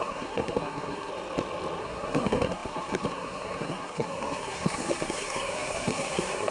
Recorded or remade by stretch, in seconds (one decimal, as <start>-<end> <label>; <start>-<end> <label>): 0.0-1.1 remade; 1.1-1.8 recorded; 1.8-6.5 remade